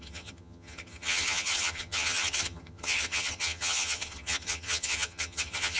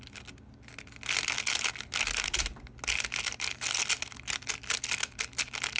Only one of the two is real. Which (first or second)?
second